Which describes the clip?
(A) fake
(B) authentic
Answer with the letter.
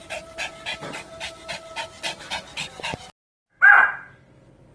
B